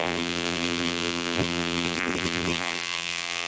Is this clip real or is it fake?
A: fake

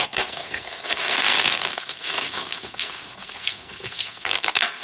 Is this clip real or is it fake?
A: fake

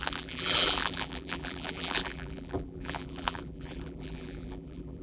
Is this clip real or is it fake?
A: fake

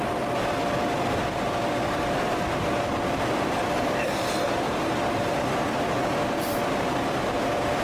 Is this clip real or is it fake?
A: fake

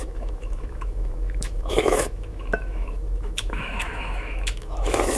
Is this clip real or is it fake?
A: fake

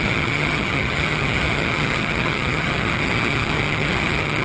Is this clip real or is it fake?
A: fake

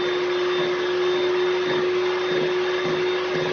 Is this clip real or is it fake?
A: real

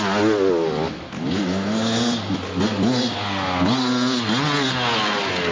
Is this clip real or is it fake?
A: real